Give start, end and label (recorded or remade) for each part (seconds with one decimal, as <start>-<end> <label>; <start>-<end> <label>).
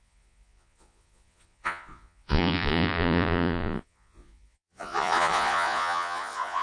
0.0-6.6 remade